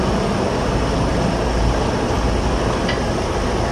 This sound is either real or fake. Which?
real